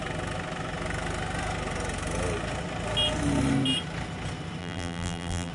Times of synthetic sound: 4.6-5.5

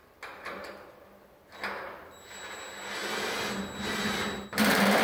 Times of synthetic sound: 0.0-0.7

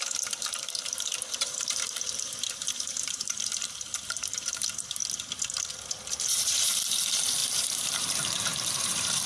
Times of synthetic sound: 0.0-5.0; 6.2-9.3

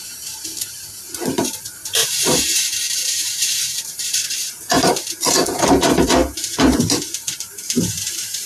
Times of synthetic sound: 0.0-8.5

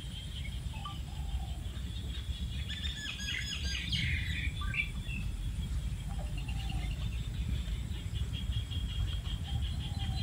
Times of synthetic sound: 0.0-0.8; 1.4-10.2

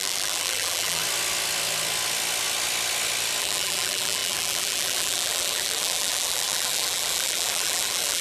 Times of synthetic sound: 0.0-1.0; 3.4-8.2

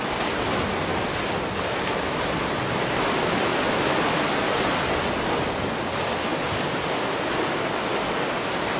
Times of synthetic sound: 6.3-7.5